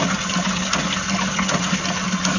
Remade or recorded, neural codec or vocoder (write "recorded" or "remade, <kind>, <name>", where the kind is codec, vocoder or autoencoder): recorded